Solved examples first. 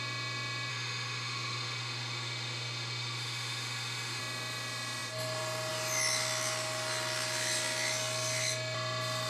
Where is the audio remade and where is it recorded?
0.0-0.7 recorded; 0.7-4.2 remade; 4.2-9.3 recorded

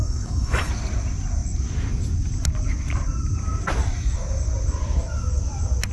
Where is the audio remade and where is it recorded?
0.0-0.7 remade; 0.7-5.9 recorded

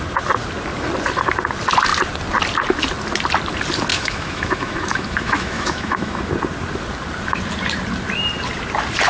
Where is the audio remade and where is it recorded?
0.0-3.9 recorded; 3.9-6.2 remade; 6.2-9.1 recorded

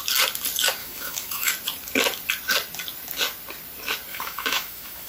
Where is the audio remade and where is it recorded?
0.0-0.8 recorded; 0.8-1.5 remade; 1.5-4.1 recorded; 4.1-5.1 remade

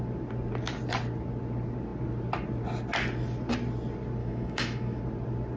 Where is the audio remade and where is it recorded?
0.0-4.2 recorded; 4.2-5.0 remade; 5.0-5.6 recorded

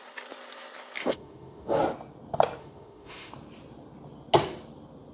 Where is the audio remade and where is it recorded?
0.0-1.0 recorded; 1.0-1.8 remade; 1.8-2.6 recorded; 2.6-3.3 remade; 3.3-5.1 recorded

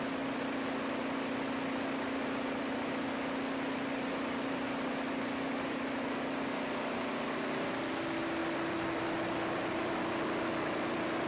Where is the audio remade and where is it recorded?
0.0-11.3 recorded

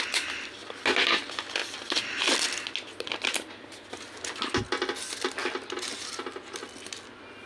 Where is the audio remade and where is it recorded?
0.0-7.5 recorded